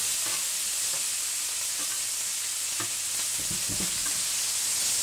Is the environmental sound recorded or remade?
recorded